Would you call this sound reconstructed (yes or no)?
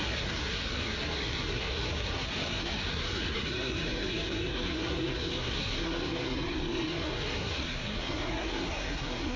yes